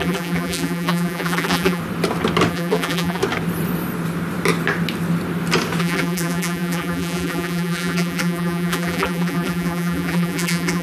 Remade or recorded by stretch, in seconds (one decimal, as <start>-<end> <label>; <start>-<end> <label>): 0.0-1.8 remade; 1.8-2.5 recorded; 2.5-3.2 remade; 3.2-5.8 recorded; 5.8-10.8 remade